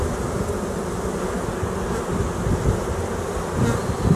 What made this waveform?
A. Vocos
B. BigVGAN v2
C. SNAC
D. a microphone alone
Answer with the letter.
D